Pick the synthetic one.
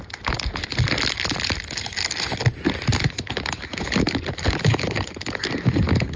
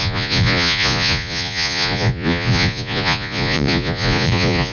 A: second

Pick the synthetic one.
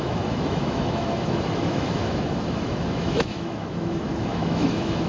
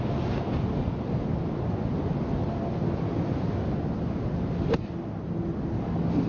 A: first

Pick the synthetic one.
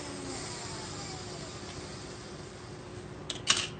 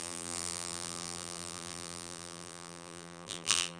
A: second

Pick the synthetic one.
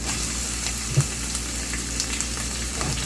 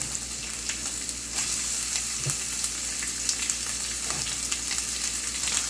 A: first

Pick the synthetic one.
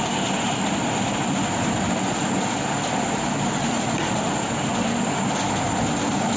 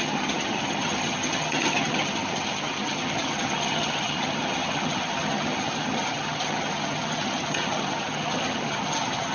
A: second